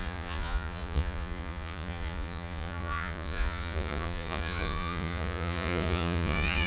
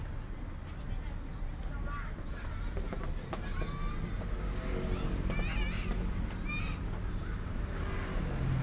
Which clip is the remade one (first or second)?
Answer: first